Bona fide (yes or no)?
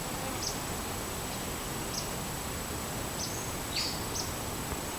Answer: yes